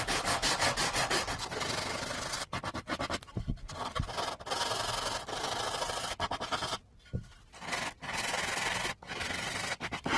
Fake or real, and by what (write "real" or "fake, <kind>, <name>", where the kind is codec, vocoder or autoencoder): real